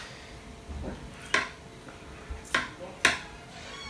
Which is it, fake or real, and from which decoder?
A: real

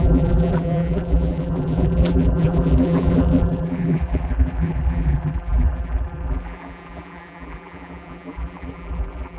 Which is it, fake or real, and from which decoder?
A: fake, vocoder, BigVGAN v2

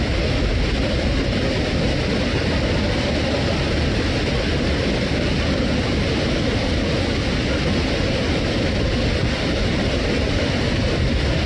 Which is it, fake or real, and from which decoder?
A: real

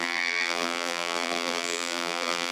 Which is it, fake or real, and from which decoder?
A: fake, vocoder, BigVGAN v2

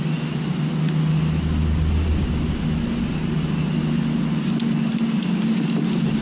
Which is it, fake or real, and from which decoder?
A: real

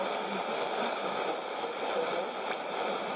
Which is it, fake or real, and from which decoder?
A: fake, vocoder, BigVGAN v2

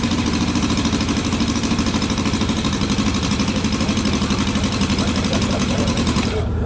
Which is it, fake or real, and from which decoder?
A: fake, vocoder, BigVGAN v2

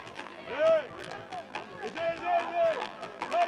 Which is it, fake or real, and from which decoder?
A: fake, vocoder, BigVGAN v2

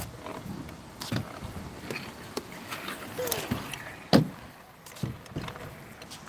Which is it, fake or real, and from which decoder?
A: real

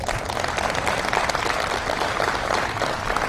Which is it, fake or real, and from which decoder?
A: real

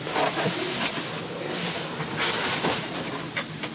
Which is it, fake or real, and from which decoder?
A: real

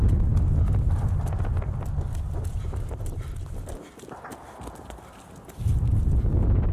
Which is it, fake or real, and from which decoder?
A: real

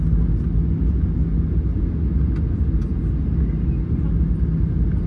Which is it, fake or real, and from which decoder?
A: real